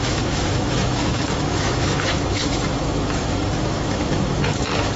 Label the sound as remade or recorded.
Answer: remade